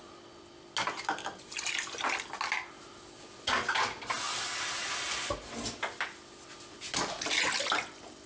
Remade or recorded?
recorded